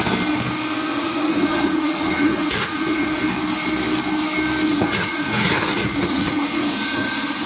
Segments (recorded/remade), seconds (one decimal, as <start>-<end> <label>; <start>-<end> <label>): 0.0-0.9 recorded; 0.9-3.2 remade; 3.2-4.7 recorded; 4.7-7.5 remade